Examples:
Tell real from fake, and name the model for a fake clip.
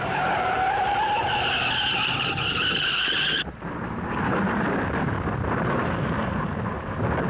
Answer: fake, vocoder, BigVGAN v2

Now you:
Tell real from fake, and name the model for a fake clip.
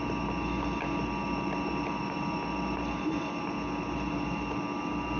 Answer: real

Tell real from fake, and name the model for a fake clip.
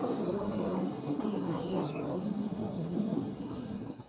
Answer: fake, codec, SNAC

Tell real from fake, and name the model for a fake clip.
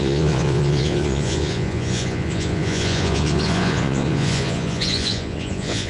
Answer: fake, vocoder, Vocos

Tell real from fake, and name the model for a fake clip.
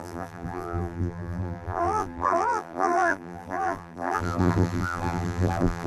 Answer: fake, vocoder, BigVGAN v2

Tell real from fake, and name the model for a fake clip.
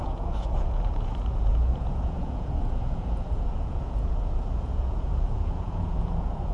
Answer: fake, vocoder, Vocos